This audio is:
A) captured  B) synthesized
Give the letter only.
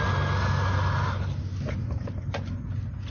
A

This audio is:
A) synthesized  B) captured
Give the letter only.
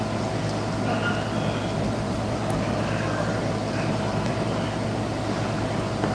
B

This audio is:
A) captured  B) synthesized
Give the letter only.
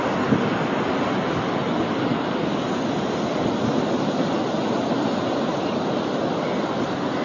A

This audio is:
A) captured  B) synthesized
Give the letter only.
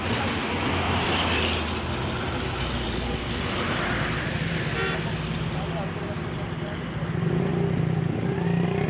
A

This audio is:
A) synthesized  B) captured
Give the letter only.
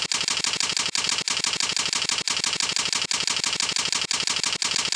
B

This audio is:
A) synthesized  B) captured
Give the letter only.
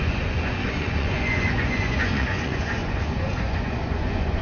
A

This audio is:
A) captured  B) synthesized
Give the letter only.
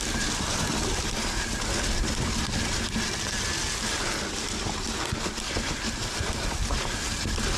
A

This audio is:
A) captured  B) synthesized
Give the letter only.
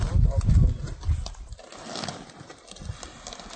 A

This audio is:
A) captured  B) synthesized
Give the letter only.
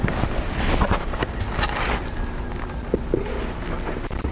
A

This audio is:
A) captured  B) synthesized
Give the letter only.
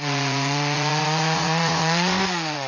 B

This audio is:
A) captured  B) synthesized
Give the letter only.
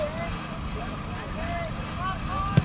A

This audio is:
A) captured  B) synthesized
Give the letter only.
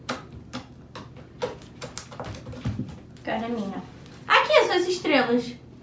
A